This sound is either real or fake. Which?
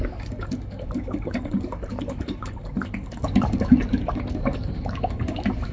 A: fake